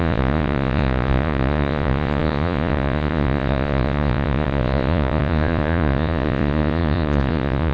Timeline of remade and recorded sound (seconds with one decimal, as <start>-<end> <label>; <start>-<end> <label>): 0.0-7.7 remade